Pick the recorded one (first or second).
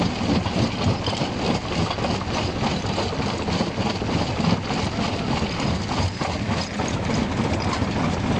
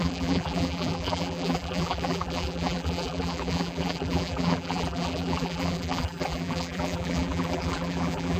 first